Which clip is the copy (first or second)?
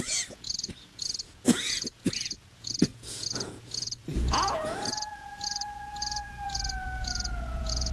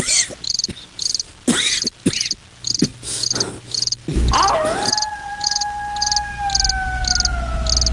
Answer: first